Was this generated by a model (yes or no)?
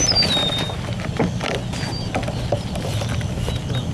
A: no